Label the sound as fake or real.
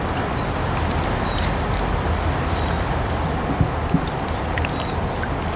real